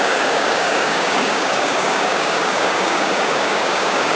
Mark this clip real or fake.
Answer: fake